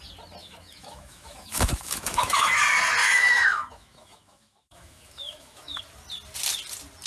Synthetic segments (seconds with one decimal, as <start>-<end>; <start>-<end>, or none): 0.4-2.6; 3.0-5.8